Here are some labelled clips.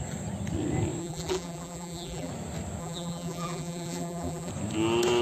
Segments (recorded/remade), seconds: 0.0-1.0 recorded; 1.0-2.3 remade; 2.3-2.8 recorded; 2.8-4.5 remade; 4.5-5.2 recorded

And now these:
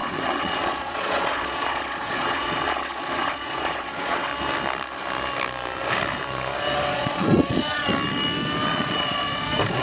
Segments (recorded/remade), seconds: 0.0-4.3 remade; 4.3-6.9 recorded; 6.9-7.9 remade; 7.9-8.7 recorded; 8.7-9.8 remade